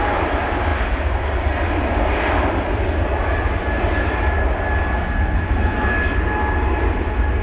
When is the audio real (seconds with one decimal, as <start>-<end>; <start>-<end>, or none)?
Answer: 0.0-7.4